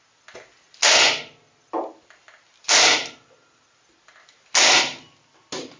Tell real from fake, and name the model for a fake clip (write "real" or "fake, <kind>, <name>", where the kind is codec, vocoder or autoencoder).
real